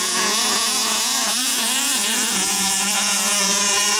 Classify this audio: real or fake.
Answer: fake